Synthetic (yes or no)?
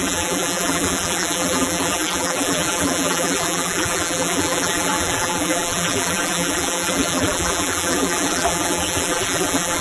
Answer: yes